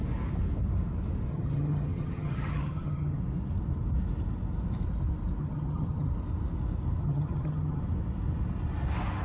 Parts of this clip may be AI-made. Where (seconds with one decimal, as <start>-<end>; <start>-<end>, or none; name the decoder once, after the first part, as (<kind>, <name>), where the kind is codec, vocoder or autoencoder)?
1.3-3.2 (vocoder, HiFi-GAN); 5.4-6.1; 7.0-7.8